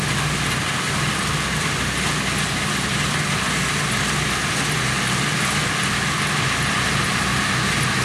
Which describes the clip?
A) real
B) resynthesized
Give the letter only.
A